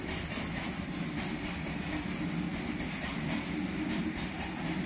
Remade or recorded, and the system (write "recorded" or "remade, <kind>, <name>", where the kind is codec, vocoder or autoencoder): recorded